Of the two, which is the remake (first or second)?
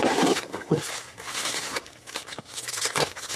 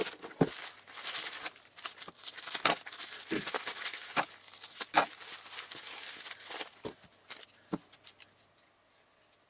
first